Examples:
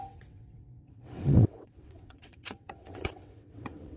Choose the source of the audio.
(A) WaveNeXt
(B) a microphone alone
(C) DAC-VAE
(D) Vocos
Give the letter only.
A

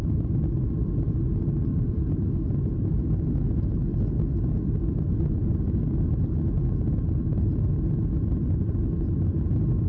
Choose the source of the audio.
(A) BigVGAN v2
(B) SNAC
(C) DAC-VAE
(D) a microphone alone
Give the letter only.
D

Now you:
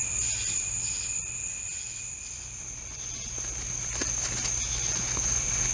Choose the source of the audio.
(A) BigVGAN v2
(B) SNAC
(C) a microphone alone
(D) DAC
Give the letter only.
C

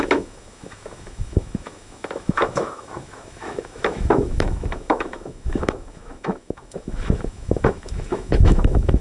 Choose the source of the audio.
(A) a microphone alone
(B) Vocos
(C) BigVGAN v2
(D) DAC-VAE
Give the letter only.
D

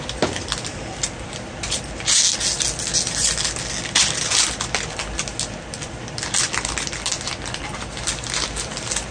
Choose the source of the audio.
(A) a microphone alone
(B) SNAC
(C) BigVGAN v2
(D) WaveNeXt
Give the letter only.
A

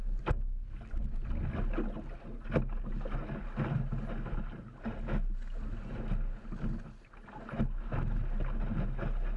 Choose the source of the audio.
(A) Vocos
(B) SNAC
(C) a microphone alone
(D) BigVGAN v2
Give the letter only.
C